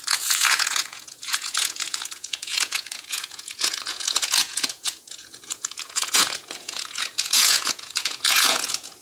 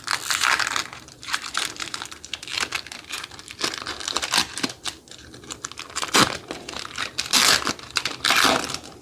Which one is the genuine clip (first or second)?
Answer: second